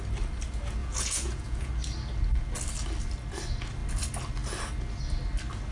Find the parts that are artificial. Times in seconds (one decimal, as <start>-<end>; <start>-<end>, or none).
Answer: 0.8-1.7